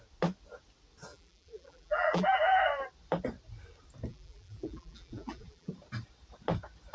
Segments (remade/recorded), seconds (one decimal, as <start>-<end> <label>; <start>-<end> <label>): 0.0-1.1 recorded; 1.1-2.6 remade; 2.6-4.1 recorded; 4.1-5.7 remade; 5.7-6.9 recorded